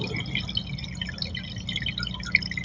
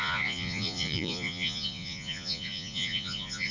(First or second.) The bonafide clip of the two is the first